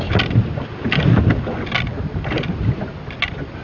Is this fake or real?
real